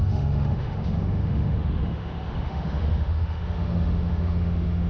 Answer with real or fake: fake